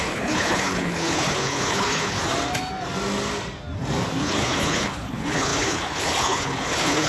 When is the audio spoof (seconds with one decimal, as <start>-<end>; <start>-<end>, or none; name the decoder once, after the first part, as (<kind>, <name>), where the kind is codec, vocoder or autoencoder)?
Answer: 0.0-2.2 (codec, HILCodec); 4.2-7.1